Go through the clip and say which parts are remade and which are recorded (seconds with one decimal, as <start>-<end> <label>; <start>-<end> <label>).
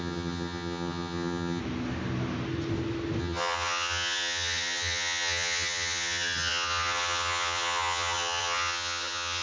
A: 0.0-1.6 remade; 1.6-3.2 recorded; 3.2-9.4 remade